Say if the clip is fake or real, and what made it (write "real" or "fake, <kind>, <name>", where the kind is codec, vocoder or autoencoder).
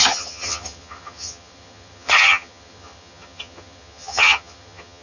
fake, vocoder, HiFi-GAN